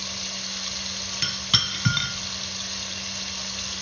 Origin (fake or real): real